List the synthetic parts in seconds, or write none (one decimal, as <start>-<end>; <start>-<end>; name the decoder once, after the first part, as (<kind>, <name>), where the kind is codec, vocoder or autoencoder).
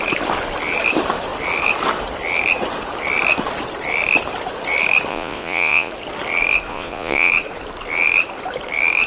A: 5.1-5.9 (vocoder, Vocos); 6.7-7.3